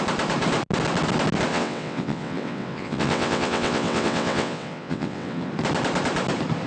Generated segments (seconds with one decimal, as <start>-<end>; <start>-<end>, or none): 1.5-5.5